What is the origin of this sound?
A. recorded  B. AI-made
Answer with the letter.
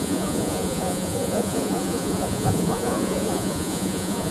B